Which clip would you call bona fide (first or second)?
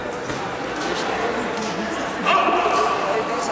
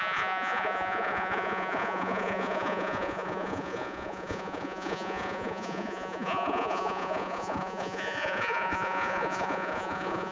first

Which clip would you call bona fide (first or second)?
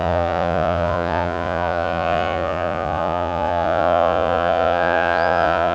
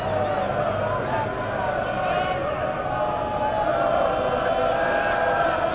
second